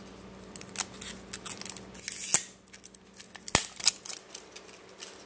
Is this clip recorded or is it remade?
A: recorded